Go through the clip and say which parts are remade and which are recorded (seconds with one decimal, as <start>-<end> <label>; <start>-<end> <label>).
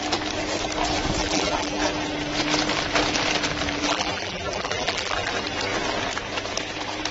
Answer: 0.0-1.2 recorded; 1.2-1.8 remade; 1.8-3.8 recorded; 3.8-5.3 remade; 5.3-7.1 recorded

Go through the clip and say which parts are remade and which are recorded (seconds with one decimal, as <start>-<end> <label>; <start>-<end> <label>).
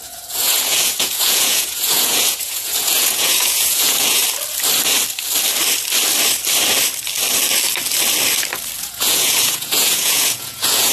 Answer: 0.0-4.2 remade; 4.2-8.8 recorded; 8.8-10.9 remade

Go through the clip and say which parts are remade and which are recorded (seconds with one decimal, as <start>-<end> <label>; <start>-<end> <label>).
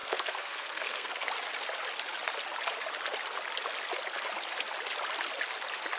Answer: 0.0-1.3 remade; 1.3-6.0 recorded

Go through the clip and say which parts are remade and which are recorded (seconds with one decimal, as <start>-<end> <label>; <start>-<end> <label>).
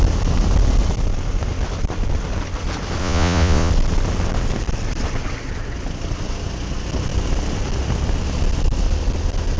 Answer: 0.0-3.0 recorded; 3.0-3.7 remade; 3.7-9.6 recorded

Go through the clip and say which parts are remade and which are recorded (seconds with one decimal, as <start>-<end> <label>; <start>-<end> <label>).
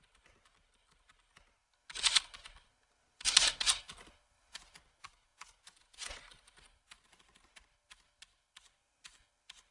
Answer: 0.0-5.3 recorded; 5.3-6.2 remade; 6.2-9.7 recorded